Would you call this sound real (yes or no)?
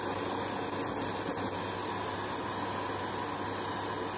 yes